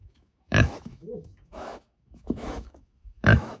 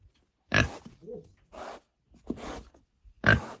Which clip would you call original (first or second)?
second